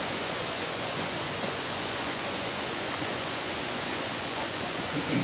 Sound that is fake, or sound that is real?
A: fake